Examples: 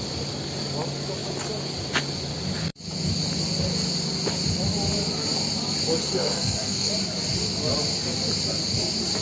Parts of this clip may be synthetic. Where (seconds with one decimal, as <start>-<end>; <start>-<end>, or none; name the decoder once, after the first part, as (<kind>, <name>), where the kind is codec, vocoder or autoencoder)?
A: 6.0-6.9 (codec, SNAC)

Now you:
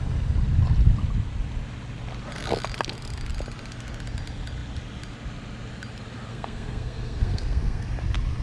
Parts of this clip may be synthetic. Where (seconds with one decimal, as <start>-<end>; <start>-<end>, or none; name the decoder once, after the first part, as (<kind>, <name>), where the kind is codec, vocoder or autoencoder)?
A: 6.3-7.8 (codec, SNAC)

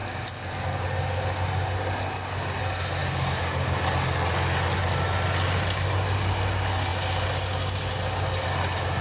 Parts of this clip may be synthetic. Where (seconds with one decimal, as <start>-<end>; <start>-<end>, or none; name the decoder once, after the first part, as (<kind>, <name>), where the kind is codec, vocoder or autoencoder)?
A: none